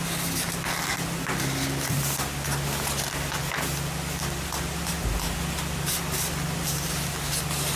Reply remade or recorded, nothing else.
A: recorded